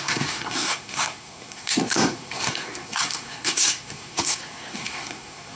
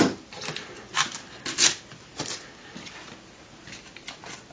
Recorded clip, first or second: second